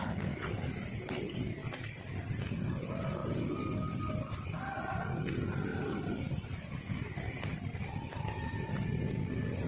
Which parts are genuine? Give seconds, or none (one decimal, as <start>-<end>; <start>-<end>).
0.0-9.7

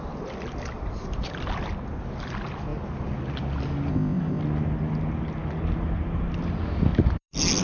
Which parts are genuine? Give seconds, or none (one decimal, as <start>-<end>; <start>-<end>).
0.0-3.9; 4.4-7.6

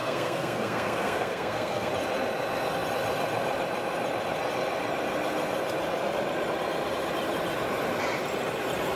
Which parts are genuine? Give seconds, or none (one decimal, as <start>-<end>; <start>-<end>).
1.9-9.0

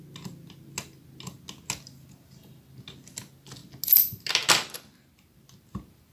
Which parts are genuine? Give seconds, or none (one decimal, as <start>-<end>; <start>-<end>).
0.0-6.1

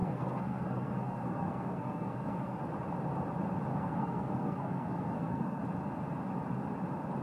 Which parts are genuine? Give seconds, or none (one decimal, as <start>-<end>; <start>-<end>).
2.6-3.7; 5.6-7.2

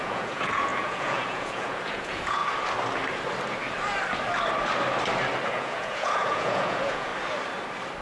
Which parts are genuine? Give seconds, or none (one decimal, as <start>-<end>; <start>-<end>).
2.4-5.5; 7.1-8.0

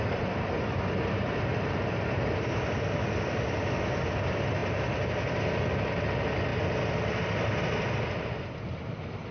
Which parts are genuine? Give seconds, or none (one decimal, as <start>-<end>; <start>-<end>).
0.0-9.3